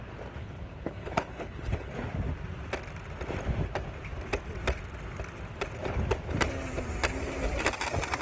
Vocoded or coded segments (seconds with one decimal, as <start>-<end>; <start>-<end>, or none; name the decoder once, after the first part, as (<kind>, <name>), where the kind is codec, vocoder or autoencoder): 0.4-1.9 (codec, HILCodec)

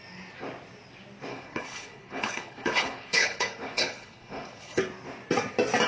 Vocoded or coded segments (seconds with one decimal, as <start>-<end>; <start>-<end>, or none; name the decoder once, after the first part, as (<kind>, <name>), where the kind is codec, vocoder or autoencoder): 1.3-4.8 (codec, HILCodec)

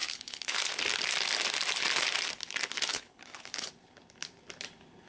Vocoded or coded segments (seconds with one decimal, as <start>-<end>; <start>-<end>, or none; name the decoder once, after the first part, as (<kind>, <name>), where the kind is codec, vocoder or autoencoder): 0.0-0.6 (codec, HILCodec); 2.9-3.7